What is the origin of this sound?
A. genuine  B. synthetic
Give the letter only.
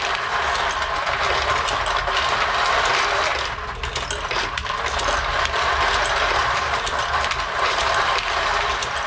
A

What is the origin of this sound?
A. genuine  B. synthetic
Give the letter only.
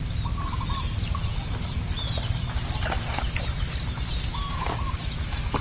A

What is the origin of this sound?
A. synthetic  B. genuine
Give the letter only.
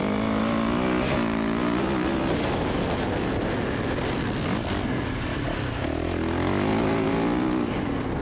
B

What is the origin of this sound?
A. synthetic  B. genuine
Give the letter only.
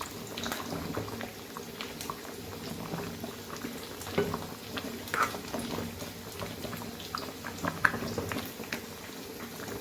B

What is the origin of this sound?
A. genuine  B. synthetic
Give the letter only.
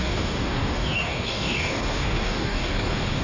B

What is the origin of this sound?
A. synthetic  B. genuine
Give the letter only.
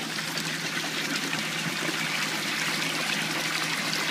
B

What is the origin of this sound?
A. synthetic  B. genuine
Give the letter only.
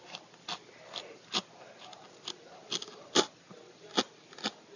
B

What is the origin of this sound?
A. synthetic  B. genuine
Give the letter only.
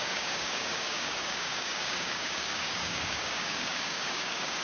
A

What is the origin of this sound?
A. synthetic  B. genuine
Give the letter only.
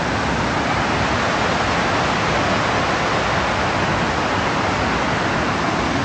B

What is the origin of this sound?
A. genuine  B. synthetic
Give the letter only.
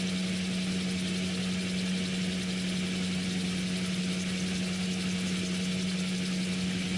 A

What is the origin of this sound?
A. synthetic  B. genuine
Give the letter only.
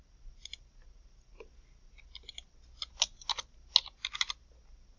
B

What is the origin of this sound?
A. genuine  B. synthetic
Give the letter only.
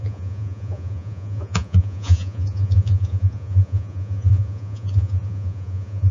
B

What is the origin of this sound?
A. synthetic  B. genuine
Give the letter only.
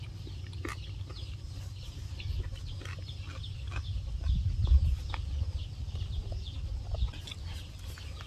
B